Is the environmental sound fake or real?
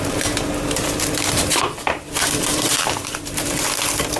fake